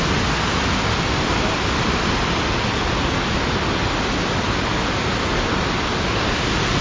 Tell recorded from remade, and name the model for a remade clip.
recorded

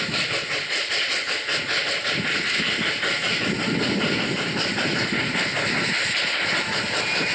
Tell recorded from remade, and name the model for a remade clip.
recorded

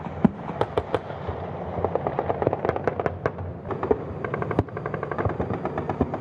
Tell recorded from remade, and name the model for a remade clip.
recorded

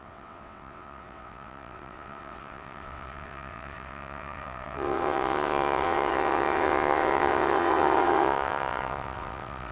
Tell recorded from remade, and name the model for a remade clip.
remade, vocoder, WaveNeXt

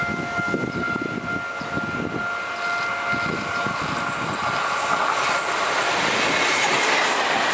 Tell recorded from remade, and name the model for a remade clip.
recorded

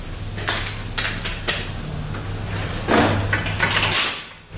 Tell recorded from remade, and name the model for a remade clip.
recorded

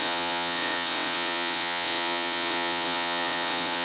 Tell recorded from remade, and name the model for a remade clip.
remade, vocoder, WaveNeXt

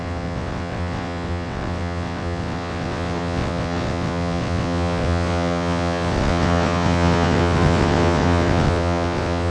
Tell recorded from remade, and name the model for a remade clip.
remade, vocoder, WaveNeXt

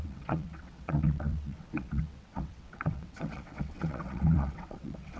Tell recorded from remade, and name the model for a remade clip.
remade, vocoder, WaveNeXt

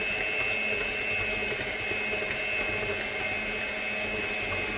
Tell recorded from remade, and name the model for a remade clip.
recorded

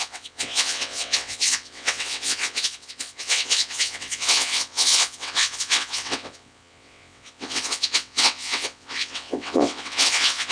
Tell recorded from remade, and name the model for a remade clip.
remade, vocoder, WaveNeXt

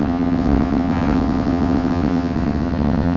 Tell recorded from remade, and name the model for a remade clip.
remade, vocoder, WaveNeXt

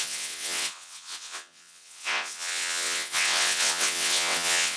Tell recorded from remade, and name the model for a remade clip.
remade, vocoder, WaveNeXt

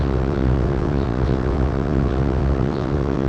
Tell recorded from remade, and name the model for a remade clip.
remade, vocoder, WaveNeXt